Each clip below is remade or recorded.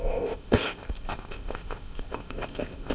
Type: remade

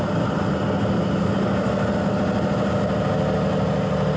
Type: recorded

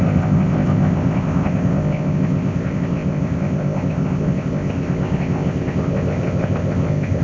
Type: remade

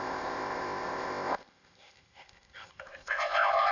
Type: remade